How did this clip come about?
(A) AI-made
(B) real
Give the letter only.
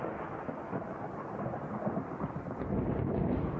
B